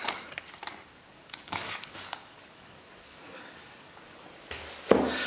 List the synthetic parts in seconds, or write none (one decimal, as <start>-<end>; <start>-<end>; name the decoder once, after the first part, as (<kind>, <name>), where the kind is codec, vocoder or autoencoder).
1.1-4.2 (codec, DAC)